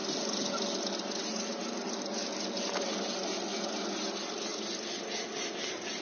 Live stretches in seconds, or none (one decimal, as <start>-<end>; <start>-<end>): 0.0-6.0